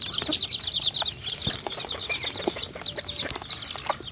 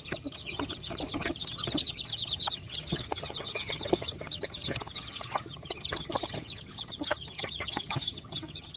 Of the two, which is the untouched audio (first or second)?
first